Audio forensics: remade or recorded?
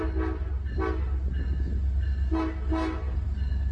recorded